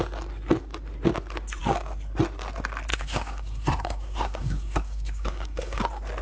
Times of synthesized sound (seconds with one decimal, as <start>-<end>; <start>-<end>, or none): 2.9-5.8